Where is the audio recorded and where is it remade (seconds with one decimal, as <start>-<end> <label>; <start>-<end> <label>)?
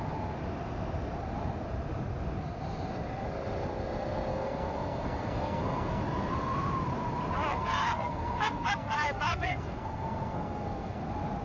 0.0-4.3 recorded; 4.3-6.0 remade; 6.0-7.5 recorded; 7.5-11.0 remade; 11.0-11.4 recorded